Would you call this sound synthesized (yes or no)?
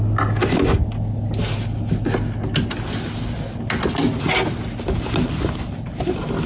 no